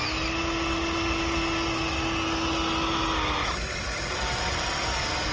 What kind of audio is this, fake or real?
real